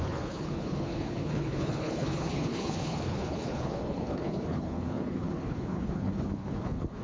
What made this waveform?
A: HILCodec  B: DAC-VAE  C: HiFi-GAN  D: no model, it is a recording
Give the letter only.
A